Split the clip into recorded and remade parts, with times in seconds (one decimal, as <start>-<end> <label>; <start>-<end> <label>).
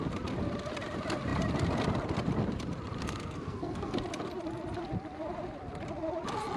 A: 0.0-3.0 recorded; 3.0-4.0 remade; 4.0-6.6 recorded